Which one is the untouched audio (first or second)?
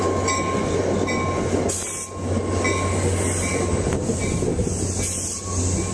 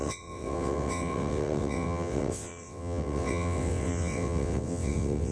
first